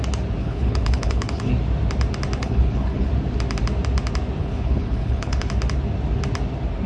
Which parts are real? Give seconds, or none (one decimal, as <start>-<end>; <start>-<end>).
0.0-0.4; 1.5-2.4; 3.1-4.4; 5.5-6.9